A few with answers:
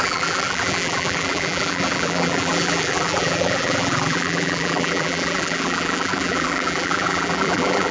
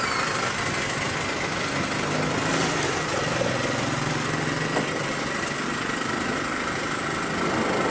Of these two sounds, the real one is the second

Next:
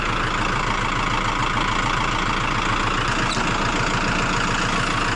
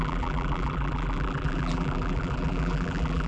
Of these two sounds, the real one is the first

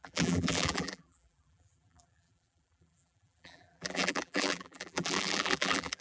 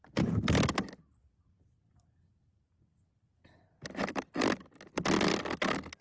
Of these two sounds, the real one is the second